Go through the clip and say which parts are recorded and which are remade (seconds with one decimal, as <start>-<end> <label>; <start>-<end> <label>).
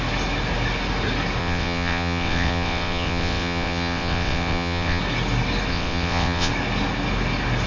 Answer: 0.0-1.4 recorded; 1.4-5.0 remade; 5.0-5.7 recorded; 5.7-6.5 remade; 6.5-7.7 recorded